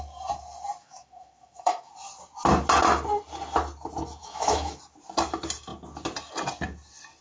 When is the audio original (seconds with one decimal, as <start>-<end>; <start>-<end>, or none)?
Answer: 0.0-0.8; 1.9-4.2; 4.8-7.2